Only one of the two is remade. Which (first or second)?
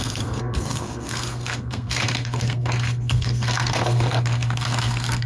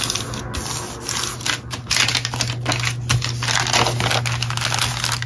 first